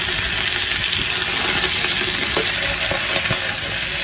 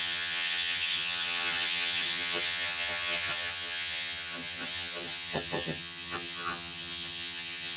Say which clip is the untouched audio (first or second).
first